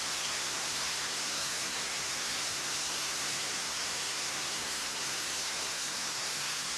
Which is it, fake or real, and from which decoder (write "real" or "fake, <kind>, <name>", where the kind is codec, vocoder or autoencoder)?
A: fake, codec, SNAC